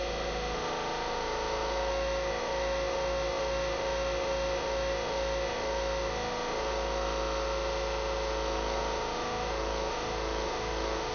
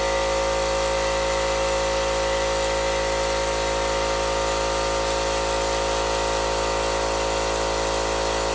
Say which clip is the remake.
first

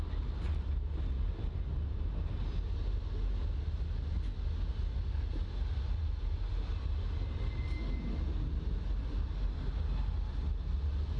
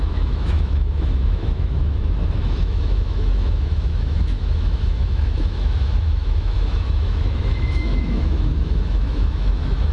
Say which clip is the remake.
second